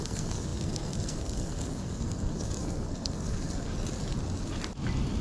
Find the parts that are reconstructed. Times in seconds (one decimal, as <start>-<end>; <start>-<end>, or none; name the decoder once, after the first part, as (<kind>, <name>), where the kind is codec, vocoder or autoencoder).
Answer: 0.0-3.7 (codec, SNAC)